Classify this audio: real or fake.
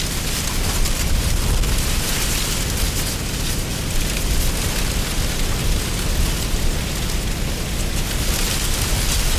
real